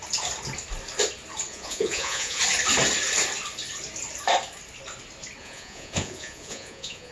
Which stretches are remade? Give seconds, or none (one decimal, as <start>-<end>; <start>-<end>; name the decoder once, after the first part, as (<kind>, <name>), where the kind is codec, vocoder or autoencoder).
1.5-2.4 (vocoder, Vocos); 5.4-7.1